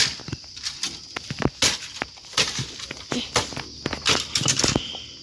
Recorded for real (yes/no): yes